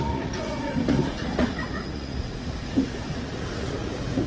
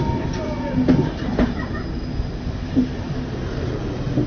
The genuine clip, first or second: second